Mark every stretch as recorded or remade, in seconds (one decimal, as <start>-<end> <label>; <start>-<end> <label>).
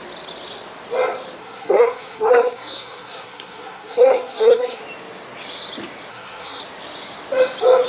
0.0-1.4 recorded; 1.4-4.8 remade; 4.8-6.1 recorded; 6.1-6.6 remade; 6.6-7.9 recorded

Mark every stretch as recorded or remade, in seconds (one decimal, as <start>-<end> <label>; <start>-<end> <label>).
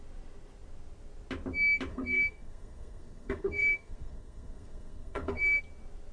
0.0-1.9 recorded; 1.9-5.6 remade; 5.6-6.1 recorded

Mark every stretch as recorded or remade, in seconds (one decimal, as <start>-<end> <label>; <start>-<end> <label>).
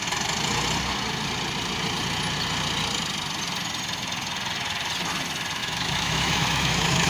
0.0-5.6 recorded; 5.6-7.1 remade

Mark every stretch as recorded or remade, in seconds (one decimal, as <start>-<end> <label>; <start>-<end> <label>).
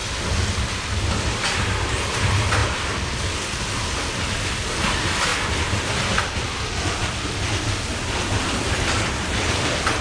0.0-10.0 recorded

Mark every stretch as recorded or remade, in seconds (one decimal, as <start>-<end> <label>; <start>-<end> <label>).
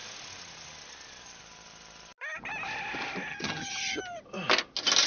0.0-3.3 recorded; 3.3-4.0 remade; 4.0-5.1 recorded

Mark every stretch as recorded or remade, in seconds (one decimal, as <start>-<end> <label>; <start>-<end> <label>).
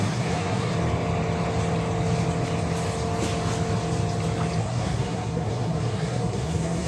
0.0-0.7 remade; 0.7-4.6 recorded; 4.6-6.9 remade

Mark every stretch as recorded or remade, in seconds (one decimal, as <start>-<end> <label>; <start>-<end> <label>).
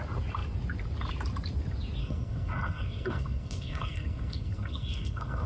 0.0-2.0 recorded; 2.0-5.5 remade